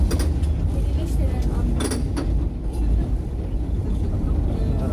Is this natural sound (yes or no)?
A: yes